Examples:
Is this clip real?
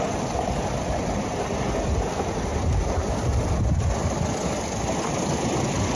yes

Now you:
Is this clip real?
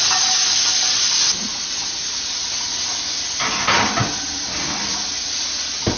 yes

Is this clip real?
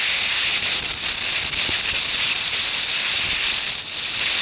yes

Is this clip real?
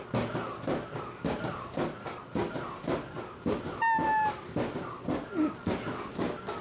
yes